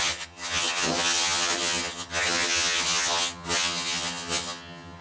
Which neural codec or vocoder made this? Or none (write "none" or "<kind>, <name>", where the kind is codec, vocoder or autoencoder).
vocoder, HiFi-GAN